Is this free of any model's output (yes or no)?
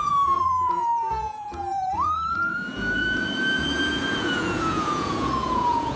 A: no